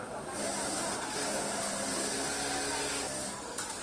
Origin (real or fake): real